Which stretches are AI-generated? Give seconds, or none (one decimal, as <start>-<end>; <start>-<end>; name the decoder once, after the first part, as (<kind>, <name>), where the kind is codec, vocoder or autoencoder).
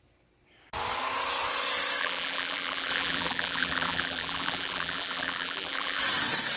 2.0-6.0 (vocoder, BigVGAN v2)